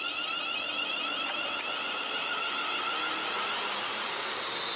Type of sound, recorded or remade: recorded